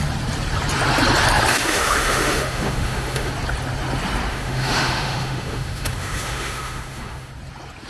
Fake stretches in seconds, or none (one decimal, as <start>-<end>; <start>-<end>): 1.5-3.3; 4.3-7.3